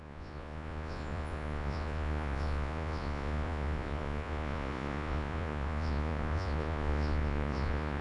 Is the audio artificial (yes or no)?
yes